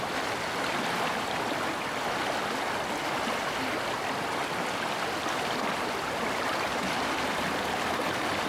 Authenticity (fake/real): real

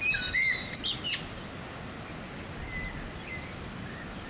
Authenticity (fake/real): real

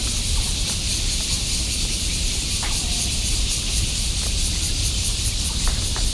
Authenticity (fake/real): fake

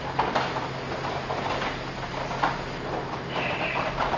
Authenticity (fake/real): real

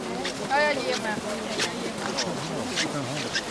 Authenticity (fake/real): real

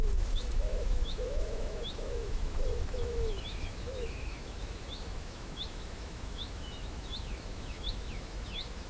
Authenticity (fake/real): fake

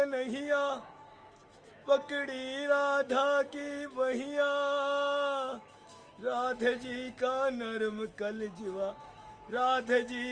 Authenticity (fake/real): fake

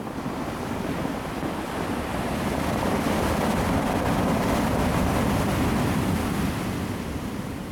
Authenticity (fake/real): real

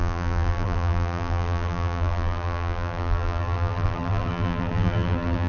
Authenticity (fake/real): fake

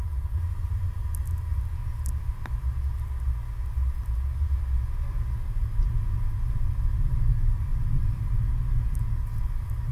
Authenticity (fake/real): real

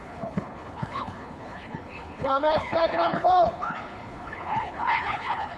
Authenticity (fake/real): fake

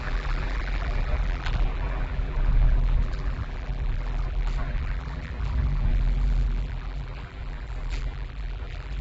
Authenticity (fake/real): fake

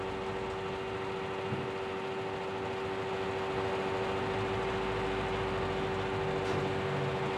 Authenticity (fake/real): real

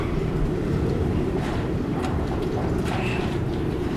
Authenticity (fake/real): fake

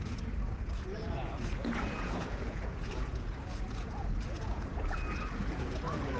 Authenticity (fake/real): fake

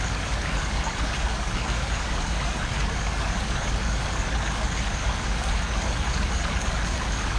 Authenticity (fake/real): fake